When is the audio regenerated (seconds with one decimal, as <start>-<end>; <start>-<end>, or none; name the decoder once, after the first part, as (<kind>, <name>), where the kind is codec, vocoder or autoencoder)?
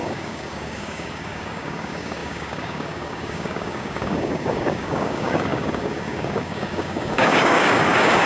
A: 0.0-8.3 (codec, DAC)